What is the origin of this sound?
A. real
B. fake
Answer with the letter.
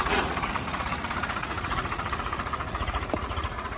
B